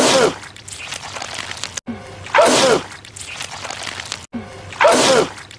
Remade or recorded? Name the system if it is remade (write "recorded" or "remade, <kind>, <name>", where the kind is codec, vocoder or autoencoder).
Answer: recorded